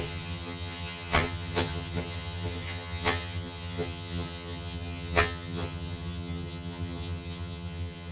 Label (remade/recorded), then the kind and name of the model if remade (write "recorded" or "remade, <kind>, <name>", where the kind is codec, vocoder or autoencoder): remade, vocoder, HiFi-GAN